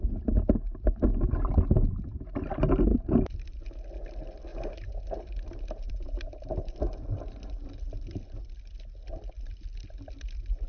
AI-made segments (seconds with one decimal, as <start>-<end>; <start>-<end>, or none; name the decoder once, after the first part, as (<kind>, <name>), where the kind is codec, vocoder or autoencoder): 2.9-3.6 (vocoder, BigVGAN v2); 4.5-8.6